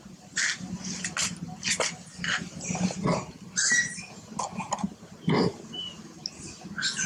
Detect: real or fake real